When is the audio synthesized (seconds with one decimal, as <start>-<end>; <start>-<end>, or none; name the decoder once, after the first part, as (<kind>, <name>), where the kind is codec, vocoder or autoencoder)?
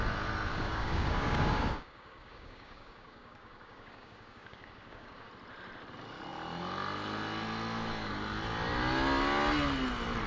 0.5-5.3 (codec, DAC)